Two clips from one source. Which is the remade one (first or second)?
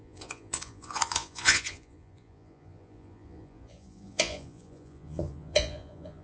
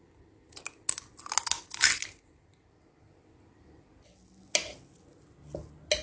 first